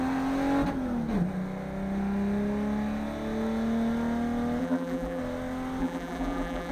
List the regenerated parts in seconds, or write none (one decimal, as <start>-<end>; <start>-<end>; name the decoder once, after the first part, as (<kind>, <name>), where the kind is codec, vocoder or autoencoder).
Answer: 4.6-5.2 (vocoder, BigVGAN v2); 5.8-6.7